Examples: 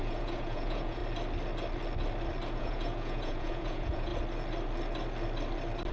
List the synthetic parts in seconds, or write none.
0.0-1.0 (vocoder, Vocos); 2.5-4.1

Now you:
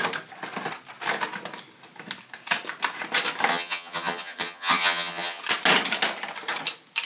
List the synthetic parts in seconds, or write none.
3.5-5.4 (vocoder, HiFi-GAN)

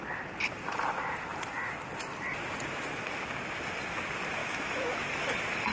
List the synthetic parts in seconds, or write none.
4.4-5.0 (autoencoder, DAC-VAE)